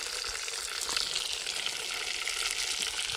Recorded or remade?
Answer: recorded